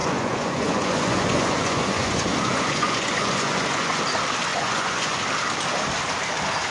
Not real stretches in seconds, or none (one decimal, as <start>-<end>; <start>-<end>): 0.0-4.0; 4.5-5.2